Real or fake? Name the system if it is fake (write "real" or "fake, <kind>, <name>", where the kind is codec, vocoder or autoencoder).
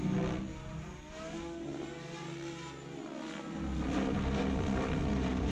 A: real